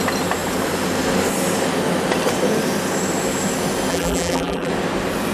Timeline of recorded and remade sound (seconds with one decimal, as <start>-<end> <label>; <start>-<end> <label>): 0.0-3.9 recorded; 3.9-4.7 remade; 4.7-5.3 recorded